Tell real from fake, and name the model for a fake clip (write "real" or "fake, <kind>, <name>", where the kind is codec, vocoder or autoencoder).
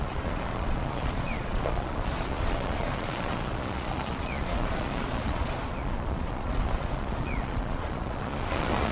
fake, vocoder, Vocos